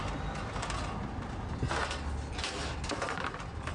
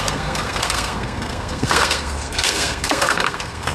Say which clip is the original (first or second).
first